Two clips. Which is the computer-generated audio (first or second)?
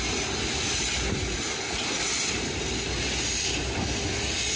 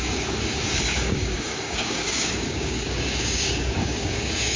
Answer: second